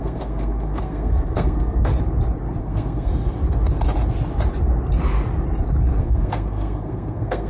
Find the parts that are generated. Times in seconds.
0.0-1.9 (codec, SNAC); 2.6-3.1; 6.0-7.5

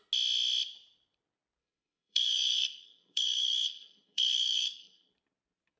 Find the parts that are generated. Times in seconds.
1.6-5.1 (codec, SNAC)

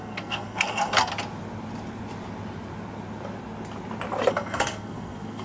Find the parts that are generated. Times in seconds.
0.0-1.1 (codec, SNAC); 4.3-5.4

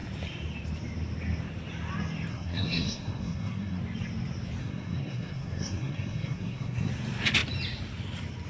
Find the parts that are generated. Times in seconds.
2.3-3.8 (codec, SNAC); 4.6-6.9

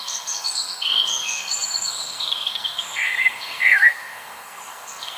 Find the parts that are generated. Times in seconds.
0.0-5.2 (codec, SNAC)

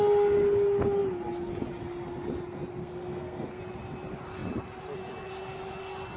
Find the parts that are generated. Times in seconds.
2.8-3.6 (codec, SNAC)

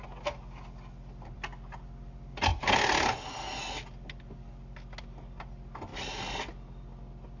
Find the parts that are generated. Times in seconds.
none

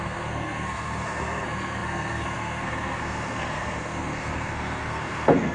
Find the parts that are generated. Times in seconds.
0.0-5.5 (codec, SNAC)